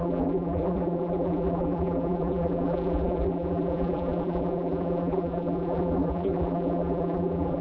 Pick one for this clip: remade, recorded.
remade